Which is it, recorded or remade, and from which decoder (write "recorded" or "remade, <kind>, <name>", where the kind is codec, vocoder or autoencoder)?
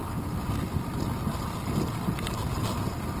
recorded